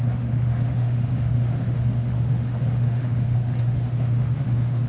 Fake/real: fake